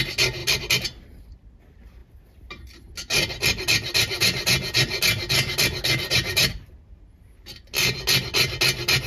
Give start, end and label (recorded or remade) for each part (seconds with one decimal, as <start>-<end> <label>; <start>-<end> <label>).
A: 0.0-9.1 recorded